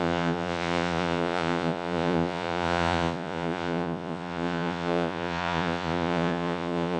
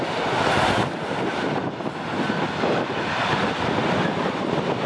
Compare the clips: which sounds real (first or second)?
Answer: second